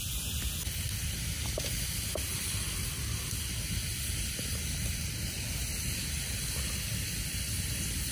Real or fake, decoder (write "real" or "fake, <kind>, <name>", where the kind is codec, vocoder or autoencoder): real